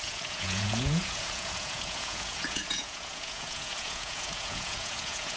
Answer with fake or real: fake